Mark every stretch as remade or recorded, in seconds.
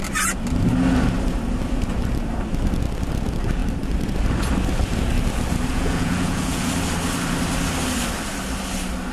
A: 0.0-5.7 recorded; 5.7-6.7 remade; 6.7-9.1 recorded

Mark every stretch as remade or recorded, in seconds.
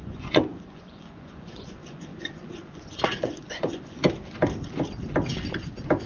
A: 0.0-4.0 remade; 4.0-6.1 recorded